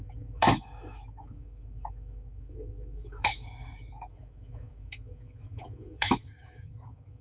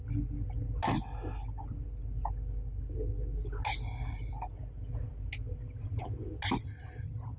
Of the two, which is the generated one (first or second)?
first